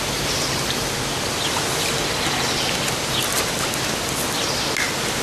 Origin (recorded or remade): recorded